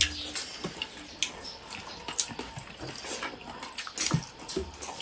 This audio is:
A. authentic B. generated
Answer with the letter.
A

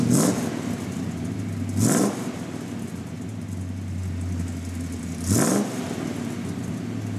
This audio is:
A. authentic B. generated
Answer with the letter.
A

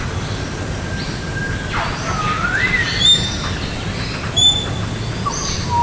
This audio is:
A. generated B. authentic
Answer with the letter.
B